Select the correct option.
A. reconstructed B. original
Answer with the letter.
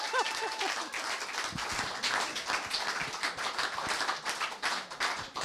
B